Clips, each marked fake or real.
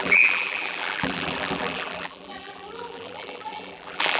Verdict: fake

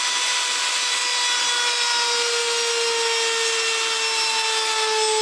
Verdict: real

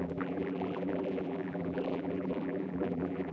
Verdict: fake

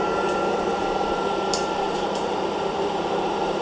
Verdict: fake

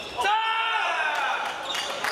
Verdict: real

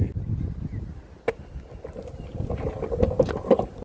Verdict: real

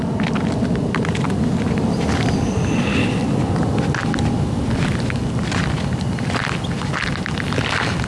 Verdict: real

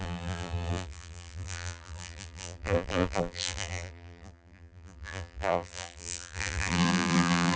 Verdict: fake